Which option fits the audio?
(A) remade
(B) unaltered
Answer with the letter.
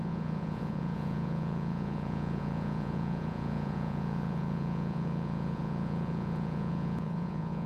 A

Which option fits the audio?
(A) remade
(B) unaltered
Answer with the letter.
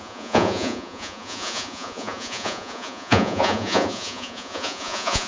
A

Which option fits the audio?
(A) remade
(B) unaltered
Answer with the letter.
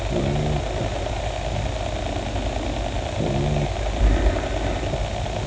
B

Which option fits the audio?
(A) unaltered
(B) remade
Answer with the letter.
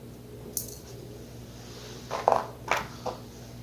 A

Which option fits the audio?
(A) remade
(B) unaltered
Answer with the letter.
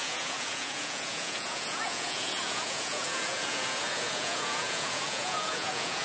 A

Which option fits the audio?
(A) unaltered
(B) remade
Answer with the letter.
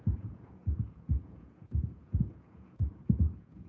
B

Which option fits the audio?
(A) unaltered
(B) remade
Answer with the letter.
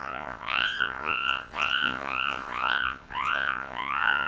B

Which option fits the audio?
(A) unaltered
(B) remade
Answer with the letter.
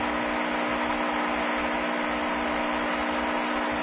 A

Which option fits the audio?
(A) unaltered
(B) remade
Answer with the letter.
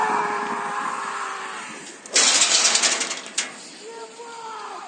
A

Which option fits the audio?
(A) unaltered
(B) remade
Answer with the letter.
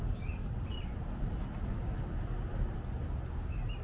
A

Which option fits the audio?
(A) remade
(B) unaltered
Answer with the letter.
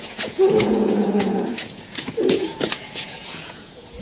A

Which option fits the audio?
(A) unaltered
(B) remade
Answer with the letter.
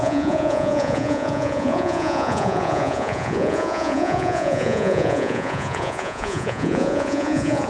B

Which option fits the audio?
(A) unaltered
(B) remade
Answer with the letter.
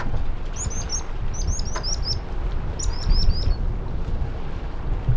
A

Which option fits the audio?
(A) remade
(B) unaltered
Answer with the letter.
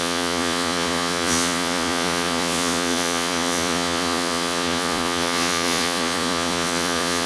A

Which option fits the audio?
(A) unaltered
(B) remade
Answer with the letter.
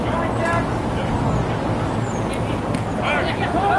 A